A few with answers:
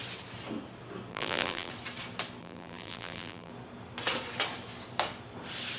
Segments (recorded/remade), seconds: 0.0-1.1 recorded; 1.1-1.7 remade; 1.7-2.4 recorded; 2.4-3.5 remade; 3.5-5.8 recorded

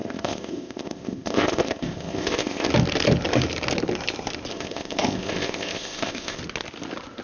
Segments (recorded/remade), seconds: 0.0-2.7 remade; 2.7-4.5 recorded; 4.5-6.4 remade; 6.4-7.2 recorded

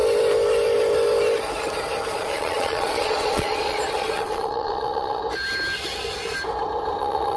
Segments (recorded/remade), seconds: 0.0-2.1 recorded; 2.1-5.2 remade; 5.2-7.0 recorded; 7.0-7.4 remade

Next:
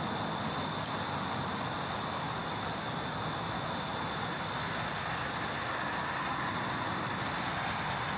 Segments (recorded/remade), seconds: 0.0-8.2 recorded

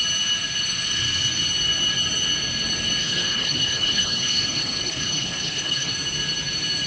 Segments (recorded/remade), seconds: 0.0-3.0 recorded; 3.0-5.9 remade; 5.9-6.9 recorded